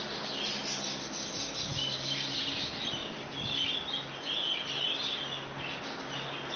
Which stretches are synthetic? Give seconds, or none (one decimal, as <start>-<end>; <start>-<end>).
1.7-2.4

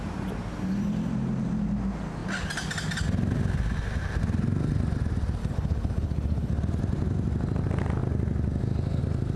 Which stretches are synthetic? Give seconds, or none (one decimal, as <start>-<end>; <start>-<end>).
5.4-6.5

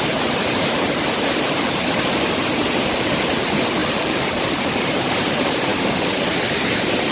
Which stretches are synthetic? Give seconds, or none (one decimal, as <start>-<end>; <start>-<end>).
0.0-5.7

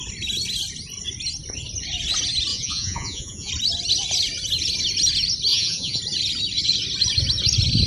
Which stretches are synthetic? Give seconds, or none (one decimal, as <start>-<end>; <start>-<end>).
2.5-3.5; 5.5-6.0

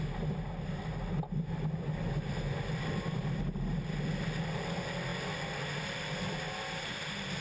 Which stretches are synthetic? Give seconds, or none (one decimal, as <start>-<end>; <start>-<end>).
none